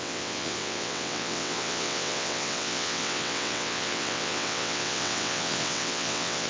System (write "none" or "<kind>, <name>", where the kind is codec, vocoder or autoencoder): vocoder, WaveNeXt